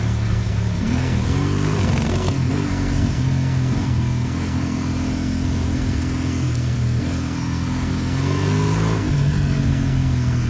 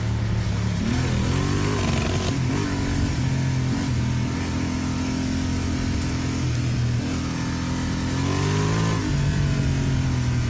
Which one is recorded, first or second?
second